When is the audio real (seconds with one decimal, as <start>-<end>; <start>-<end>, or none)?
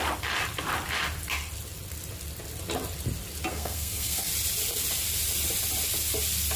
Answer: 0.0-3.5; 4.3-6.6